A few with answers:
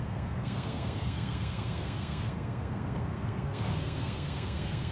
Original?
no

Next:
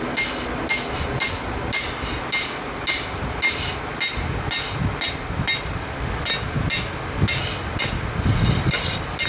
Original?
yes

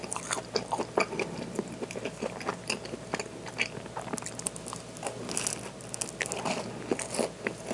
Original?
yes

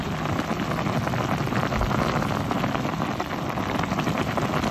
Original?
yes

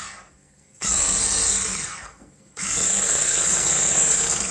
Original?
no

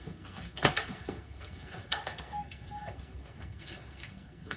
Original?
no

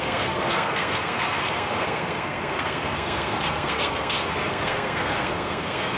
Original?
no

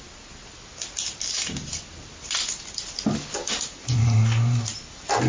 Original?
yes